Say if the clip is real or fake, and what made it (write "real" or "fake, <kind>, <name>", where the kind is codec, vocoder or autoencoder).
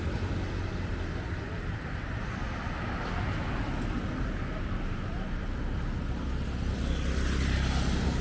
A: real